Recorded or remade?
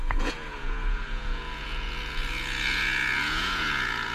remade